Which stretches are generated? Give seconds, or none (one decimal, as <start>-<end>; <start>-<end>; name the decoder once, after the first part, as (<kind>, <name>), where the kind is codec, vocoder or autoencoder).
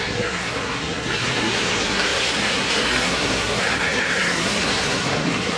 0.0-5.6 (codec, SNAC)